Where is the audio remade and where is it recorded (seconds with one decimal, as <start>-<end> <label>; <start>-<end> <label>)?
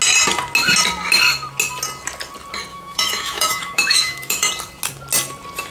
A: 0.0-2.7 recorded; 2.7-4.5 remade; 4.5-5.7 recorded